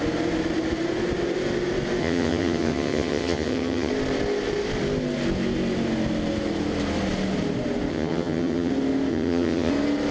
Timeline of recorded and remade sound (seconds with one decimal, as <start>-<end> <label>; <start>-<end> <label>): 0.0-2.0 recorded; 2.0-3.9 remade; 3.9-7.9 recorded; 7.9-8.7 remade; 8.7-9.1 recorded; 9.1-9.7 remade; 9.7-10.1 recorded